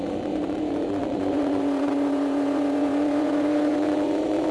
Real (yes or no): no